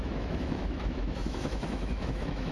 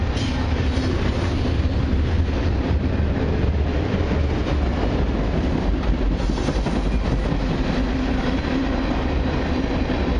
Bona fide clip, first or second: second